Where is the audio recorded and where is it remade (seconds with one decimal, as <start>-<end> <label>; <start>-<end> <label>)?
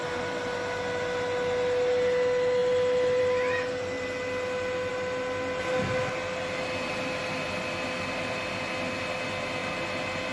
0.0-10.3 recorded